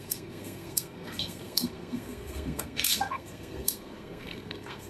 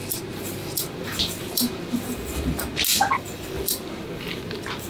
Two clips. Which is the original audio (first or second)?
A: second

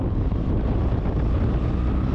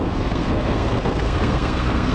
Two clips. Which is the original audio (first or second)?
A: first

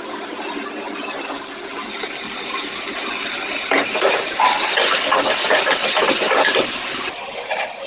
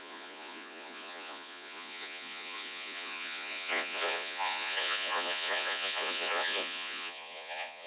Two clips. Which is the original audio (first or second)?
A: first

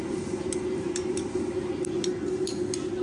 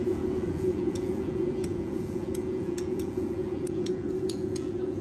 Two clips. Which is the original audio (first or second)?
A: first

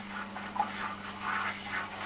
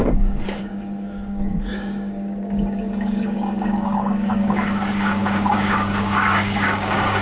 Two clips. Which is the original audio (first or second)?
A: first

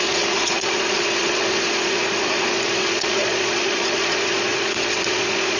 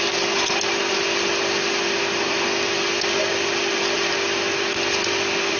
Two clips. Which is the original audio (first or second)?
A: second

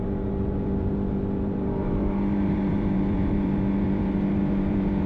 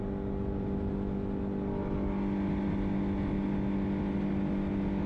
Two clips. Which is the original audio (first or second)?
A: second